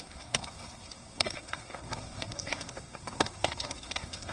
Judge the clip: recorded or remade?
remade